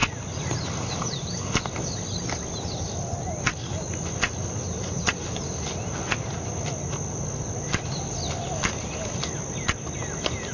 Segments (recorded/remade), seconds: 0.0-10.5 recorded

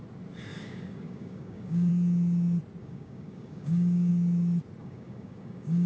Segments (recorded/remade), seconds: 0.0-0.5 recorded; 0.5-1.9 remade; 1.9-2.8 recorded; 2.8-4.1 remade; 4.1-4.8 recorded; 4.8-5.9 remade

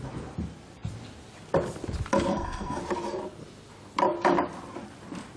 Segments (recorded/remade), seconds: 0.0-2.3 recorded; 2.3-2.8 remade; 2.8-5.4 recorded

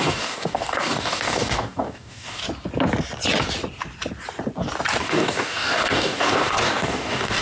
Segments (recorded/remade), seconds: 0.0-2.4 remade; 2.4-5.0 recorded; 5.0-7.4 remade

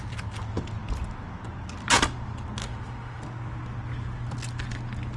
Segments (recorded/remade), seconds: 0.0-2.6 recorded; 2.6-3.2 remade; 3.2-5.2 recorded

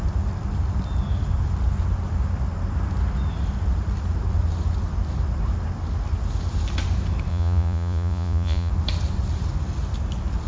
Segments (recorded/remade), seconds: 0.0-7.3 recorded; 7.3-8.7 remade; 8.7-10.5 recorded

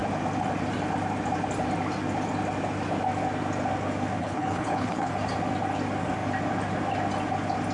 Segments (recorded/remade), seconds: 0.0-4.2 recorded; 4.2-5.1 remade; 5.1-7.7 recorded